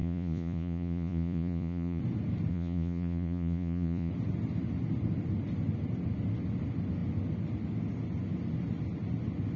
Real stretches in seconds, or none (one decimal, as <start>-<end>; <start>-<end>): 2.0-2.5; 4.1-9.6